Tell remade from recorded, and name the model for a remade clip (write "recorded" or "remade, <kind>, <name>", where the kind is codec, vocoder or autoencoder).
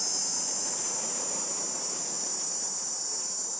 recorded